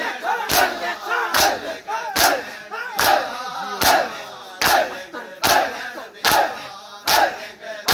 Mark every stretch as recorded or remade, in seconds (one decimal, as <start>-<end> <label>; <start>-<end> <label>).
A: 0.0-7.9 recorded